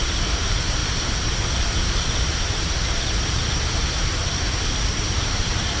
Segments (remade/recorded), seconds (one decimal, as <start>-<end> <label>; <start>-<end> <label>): 0.0-0.8 remade; 0.8-2.2 recorded; 2.2-4.2 remade; 4.2-5.0 recorded; 5.0-5.8 remade